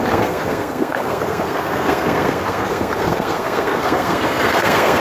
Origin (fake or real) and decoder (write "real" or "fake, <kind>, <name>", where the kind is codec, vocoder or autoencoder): fake, codec, SNAC